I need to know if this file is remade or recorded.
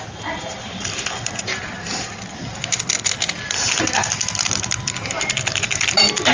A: recorded